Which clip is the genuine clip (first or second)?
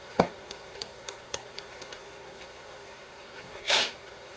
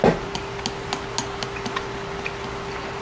second